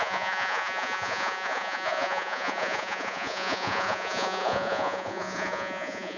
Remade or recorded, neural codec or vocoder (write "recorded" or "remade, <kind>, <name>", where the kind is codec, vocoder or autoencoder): remade, vocoder, Vocos